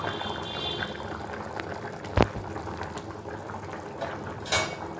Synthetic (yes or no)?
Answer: no